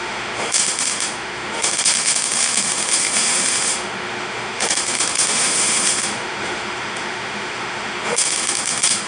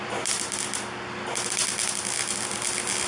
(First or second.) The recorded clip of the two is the second